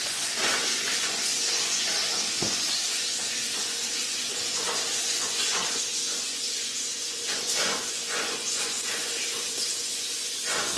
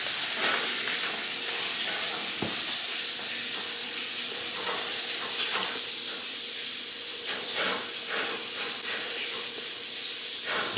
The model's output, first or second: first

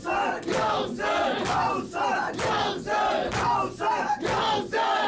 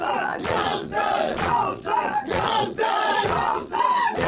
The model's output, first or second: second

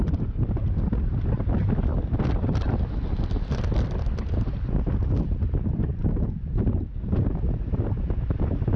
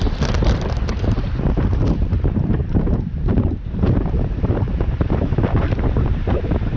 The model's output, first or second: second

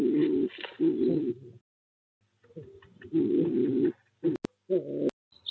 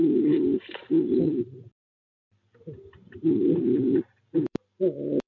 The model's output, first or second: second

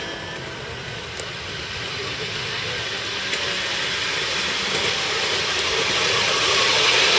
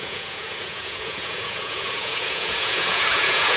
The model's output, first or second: second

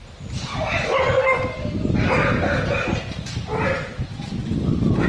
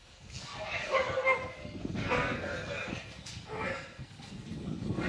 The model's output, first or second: second